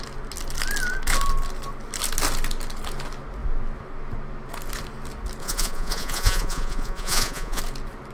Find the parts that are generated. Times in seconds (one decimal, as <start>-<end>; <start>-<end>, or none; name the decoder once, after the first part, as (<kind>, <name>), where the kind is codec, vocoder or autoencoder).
5.4-7.6 (vocoder, Vocos)